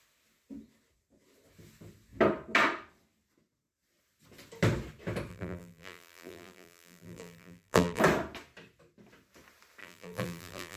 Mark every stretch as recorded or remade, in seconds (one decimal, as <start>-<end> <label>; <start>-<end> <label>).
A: 0.0-5.3 recorded; 5.3-8.0 remade; 8.0-9.8 recorded; 9.8-10.8 remade